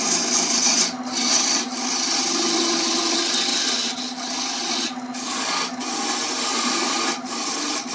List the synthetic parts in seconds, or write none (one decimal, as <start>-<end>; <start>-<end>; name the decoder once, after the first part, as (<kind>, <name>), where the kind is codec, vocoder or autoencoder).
6.5-7.9 (vocoder, BigVGAN v2)